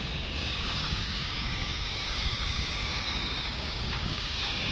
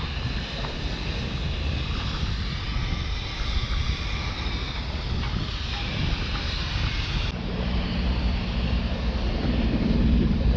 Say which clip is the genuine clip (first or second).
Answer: second